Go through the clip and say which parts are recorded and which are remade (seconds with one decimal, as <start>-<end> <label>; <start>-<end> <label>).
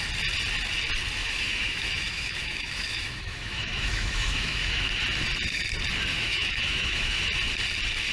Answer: 0.0-1.2 recorded; 1.2-5.0 remade; 5.0-6.1 recorded; 6.1-7.2 remade; 7.2-8.1 recorded